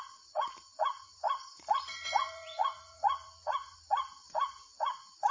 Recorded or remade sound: remade